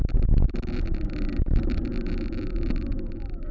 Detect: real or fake real